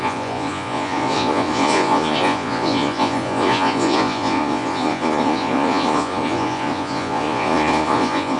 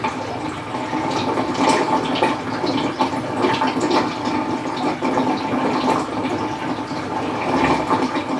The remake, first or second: first